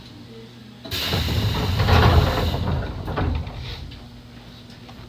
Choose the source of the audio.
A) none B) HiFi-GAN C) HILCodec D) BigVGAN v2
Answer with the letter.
A